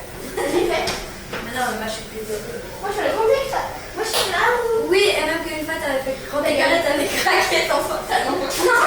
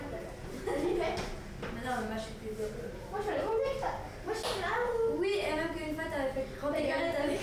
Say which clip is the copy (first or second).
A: first